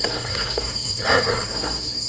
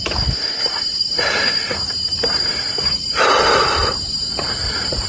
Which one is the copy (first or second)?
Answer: first